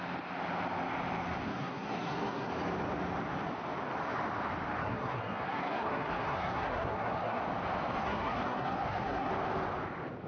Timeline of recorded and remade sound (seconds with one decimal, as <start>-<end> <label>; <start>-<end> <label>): 0.0-1.5 recorded; 1.5-2.5 remade; 2.5-4.8 recorded; 4.8-7.4 remade; 7.4-8.0 recorded; 8.0-9.3 remade; 9.3-10.3 recorded